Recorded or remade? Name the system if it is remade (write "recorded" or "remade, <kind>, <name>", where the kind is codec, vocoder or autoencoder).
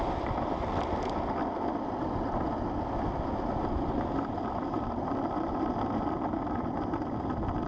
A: recorded